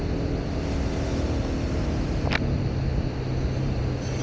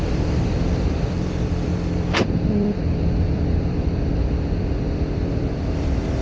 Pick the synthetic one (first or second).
second